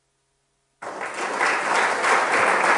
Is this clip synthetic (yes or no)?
no